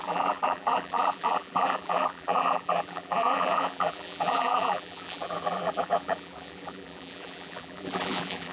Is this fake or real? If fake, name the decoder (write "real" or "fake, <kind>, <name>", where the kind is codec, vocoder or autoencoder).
fake, vocoder, BigVGAN v2